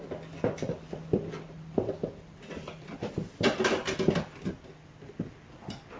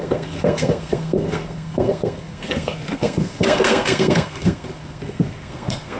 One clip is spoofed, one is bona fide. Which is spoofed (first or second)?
second